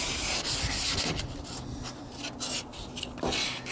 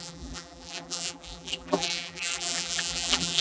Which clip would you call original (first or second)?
first